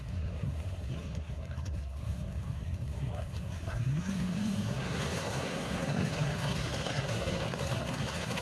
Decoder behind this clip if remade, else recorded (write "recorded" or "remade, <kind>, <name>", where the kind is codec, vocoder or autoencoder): remade, codec, SNAC